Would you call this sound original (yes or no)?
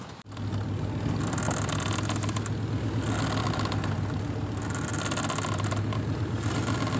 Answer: yes